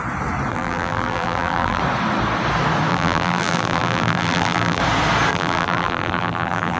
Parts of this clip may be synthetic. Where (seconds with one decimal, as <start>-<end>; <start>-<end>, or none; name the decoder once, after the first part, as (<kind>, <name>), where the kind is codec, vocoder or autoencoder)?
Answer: 0.5-1.8 (vocoder, BigVGAN v2); 2.9-4.8; 5.3-6.8